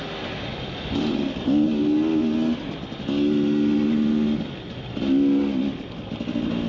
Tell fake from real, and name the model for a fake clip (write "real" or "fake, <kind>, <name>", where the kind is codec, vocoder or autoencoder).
real